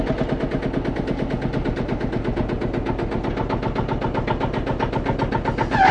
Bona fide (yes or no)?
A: yes